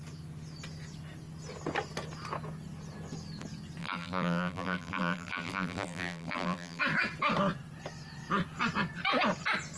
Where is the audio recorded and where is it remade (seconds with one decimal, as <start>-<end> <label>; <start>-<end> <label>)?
0.0-3.8 recorded; 3.8-6.8 remade; 6.8-9.8 recorded